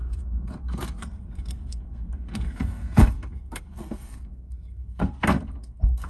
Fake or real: fake